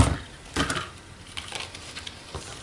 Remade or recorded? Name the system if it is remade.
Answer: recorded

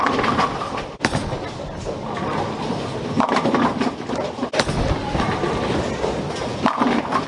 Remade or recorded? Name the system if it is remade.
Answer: recorded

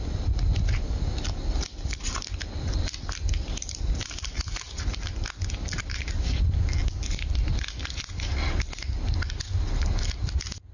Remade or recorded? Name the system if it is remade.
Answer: recorded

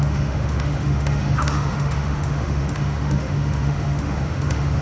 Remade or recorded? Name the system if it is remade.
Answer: remade, autoencoder, DAC-VAE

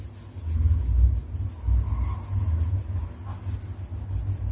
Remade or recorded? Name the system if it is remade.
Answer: recorded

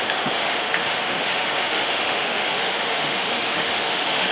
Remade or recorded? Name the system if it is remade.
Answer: remade, autoencoder, DAC-VAE